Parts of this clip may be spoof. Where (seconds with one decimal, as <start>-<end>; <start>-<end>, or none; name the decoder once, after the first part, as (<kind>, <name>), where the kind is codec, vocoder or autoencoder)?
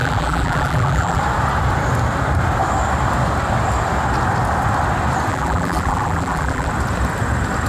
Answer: 0.0-1.2 (vocoder, BigVGAN v2); 5.3-6.7